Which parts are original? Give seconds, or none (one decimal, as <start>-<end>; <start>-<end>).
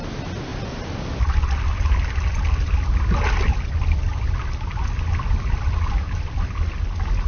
0.0-7.3